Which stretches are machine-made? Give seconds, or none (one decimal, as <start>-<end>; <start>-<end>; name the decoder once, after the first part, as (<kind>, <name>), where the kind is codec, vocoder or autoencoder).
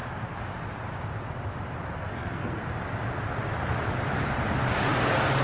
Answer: 2.0-2.6 (codec, SNAC)